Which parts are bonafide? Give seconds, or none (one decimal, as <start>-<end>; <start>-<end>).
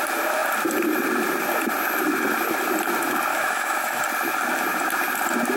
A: 0.0-3.3; 4.0-5.6